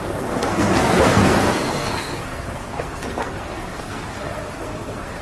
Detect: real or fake fake